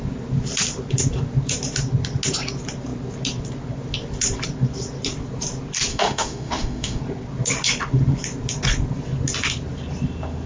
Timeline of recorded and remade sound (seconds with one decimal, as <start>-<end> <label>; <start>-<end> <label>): 0.0-5.9 recorded; 5.9-7.0 remade; 7.0-10.5 recorded